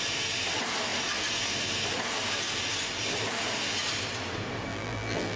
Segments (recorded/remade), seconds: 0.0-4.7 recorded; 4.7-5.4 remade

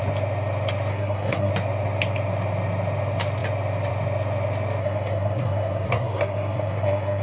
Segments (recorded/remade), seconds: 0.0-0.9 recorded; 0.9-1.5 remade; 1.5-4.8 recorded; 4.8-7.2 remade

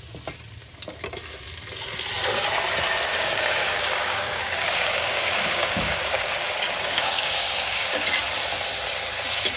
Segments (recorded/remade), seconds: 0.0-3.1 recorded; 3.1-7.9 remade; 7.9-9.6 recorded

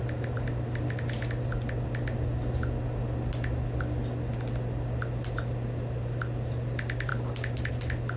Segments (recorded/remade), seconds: 0.0-8.2 recorded